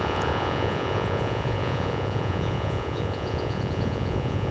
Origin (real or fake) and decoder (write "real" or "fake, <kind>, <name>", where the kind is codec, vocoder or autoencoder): fake, vocoder, Vocos